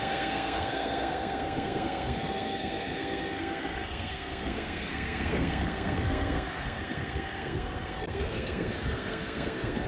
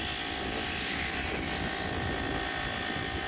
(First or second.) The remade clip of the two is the first